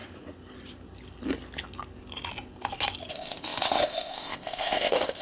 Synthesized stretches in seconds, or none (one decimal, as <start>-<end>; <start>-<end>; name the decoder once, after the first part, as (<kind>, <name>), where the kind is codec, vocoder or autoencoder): 3.1-5.2 (codec, ZipCodec)